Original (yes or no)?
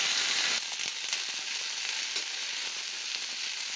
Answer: yes